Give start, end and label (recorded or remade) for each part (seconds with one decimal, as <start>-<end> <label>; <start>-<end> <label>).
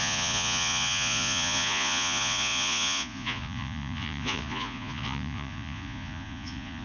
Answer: 0.0-6.8 remade